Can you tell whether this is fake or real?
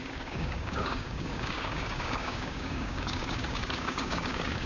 fake